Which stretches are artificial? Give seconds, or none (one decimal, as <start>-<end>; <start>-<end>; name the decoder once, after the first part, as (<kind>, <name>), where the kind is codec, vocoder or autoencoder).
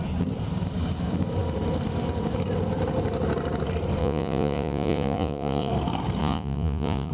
4.0-5.7 (vocoder, Vocos); 6.2-7.1